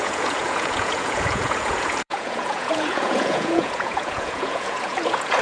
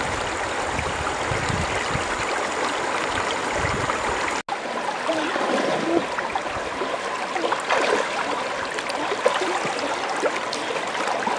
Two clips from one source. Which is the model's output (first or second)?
first